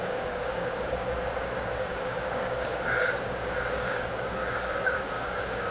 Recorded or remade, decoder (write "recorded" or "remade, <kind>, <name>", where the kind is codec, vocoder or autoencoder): remade, codec, DAC